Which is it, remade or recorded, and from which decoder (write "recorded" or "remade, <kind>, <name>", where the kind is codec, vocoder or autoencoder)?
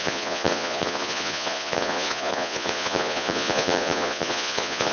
remade, vocoder, Vocos